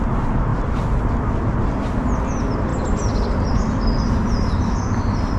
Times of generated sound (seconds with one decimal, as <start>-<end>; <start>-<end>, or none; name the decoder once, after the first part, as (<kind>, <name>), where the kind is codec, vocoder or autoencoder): none

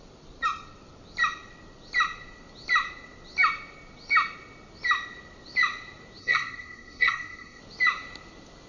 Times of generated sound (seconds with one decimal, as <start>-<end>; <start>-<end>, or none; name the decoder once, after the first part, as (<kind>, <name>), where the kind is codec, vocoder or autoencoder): 6.2-7.6 (codec, SNAC)

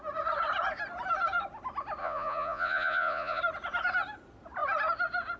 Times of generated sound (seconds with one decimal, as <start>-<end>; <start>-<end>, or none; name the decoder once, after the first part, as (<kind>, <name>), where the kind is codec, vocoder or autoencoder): 2.0-3.4 (vocoder, Vocos)

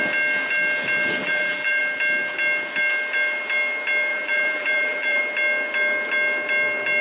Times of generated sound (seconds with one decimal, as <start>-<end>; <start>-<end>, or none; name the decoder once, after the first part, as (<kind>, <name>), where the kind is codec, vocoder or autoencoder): 1.2-1.8 (vocoder, BigVGAN v2); 4.1-5.2

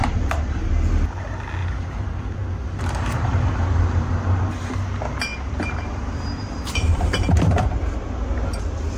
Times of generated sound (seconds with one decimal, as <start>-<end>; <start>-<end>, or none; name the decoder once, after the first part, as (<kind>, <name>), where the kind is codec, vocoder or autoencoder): 0.0-0.7 (vocoder, BigVGAN v2); 1.6-4.4; 5.3-7.7

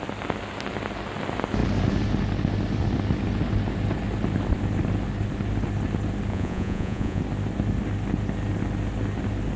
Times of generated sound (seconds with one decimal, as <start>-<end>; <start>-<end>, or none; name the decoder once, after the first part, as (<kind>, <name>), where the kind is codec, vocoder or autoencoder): 6.3-7.2 (vocoder, Vocos)